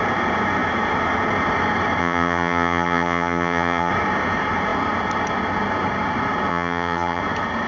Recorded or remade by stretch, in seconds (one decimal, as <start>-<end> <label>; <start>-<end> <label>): 0.0-2.0 recorded; 2.0-3.9 remade; 3.9-6.5 recorded; 6.5-7.2 remade; 7.2-7.7 recorded